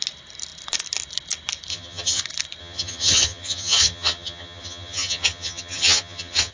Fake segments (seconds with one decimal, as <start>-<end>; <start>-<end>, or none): 1.7-2.2; 2.6-6.5